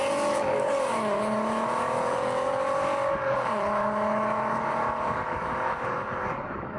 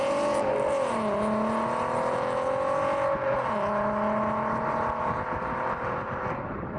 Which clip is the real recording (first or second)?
second